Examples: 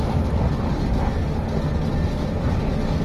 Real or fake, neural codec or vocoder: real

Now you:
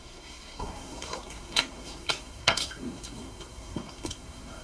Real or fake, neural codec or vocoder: fake, codec, SNAC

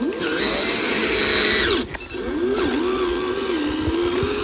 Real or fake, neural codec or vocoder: real